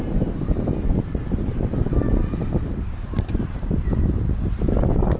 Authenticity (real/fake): real